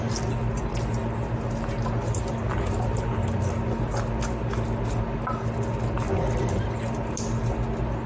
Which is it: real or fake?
real